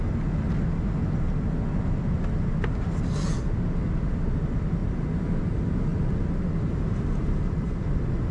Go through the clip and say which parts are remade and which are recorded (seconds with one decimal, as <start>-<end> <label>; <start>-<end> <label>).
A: 0.0-8.3 recorded